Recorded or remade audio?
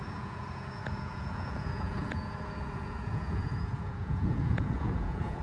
remade